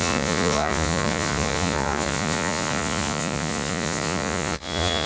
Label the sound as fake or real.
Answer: fake